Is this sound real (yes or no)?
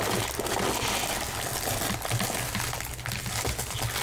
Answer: yes